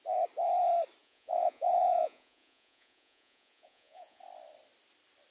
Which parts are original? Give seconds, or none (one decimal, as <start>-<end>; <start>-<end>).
0.0-1.0; 4.2-5.3

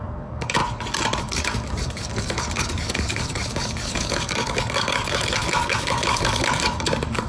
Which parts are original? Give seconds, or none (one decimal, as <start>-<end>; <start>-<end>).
0.6-1.2

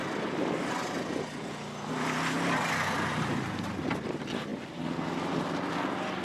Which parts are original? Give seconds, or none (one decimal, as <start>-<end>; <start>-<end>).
0.0-6.2

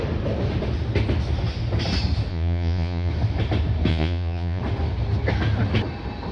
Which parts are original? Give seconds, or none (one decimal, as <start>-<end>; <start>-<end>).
0.0-2.3; 3.1-3.9; 4.6-6.3

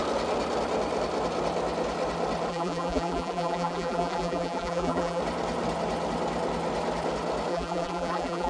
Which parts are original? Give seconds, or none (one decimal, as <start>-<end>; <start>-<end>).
0.0-2.5; 5.2-7.5

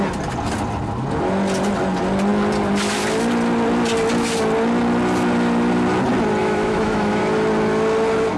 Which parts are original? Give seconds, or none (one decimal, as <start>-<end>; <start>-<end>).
0.0-6.4; 7.2-8.4

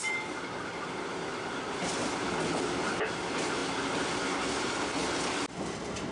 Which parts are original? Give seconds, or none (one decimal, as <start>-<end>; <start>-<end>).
0.0-6.1

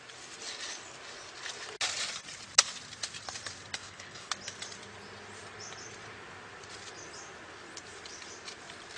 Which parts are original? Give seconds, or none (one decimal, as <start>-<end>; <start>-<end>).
0.0-3.8; 4.3-9.0